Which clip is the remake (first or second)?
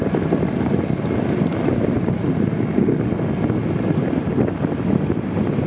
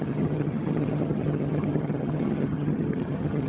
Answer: second